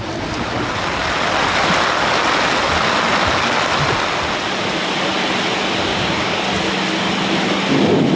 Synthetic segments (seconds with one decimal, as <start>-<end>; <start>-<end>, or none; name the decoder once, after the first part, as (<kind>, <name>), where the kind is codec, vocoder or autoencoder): 5.9-6.4 (codec, DAC)